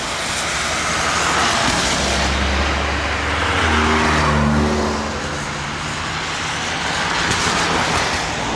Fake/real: real